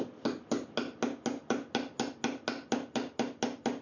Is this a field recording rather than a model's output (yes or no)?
yes